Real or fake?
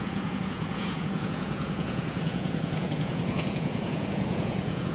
fake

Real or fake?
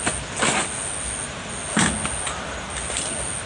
real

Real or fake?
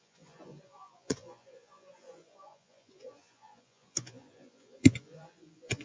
fake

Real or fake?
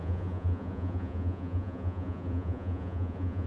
fake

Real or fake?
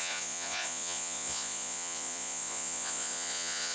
fake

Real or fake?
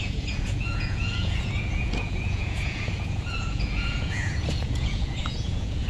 fake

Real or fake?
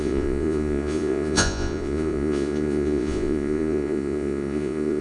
fake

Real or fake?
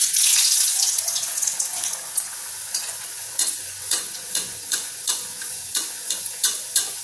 fake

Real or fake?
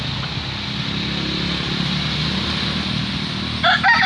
real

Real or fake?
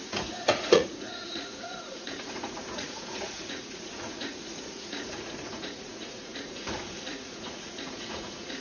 fake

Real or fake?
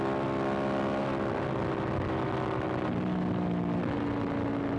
real